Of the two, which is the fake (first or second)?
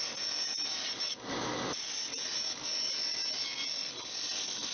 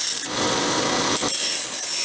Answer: second